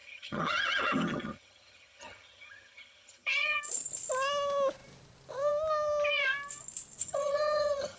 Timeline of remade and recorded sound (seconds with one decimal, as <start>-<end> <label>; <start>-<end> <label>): 0.0-3.6 remade; 3.6-7.0 recorded; 7.0-8.0 remade